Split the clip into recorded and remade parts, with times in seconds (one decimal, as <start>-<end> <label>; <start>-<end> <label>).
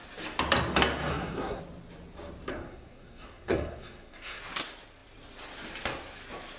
0.0-1.1 recorded; 1.1-1.6 remade; 1.6-2.5 recorded; 2.5-4.4 remade; 4.4-6.6 recorded